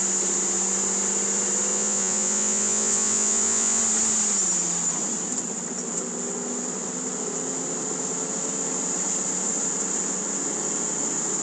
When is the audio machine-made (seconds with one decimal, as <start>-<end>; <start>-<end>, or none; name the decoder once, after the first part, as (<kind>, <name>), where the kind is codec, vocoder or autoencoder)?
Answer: 1.7-3.8 (vocoder, Vocos)

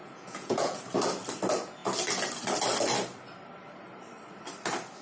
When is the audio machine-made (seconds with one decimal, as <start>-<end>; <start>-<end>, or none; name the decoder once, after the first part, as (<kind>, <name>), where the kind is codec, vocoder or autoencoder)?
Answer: 0.0-0.8 (vocoder, Vocos)

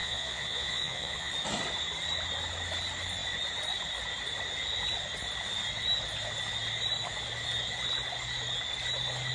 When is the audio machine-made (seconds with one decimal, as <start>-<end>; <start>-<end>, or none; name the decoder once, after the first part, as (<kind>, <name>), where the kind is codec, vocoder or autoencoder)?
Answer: 0.0-1.3 (vocoder, Vocos)

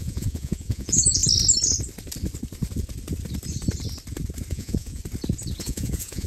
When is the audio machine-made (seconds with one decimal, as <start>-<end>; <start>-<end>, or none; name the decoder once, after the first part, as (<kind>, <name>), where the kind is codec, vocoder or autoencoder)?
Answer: 0.0-1.2 (vocoder, Vocos); 4.5-5.0; 5.6-6.3

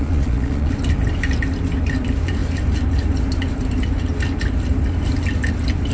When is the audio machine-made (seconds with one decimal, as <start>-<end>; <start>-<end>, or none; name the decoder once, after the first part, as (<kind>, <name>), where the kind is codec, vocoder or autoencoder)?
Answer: 0.0-0.7 (vocoder, Vocos)